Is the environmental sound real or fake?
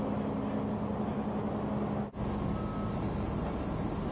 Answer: real